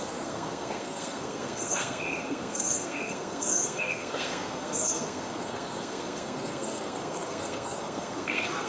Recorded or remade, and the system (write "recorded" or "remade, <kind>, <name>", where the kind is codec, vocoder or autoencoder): remade, codec, SNAC